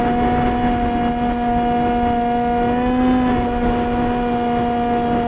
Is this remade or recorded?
recorded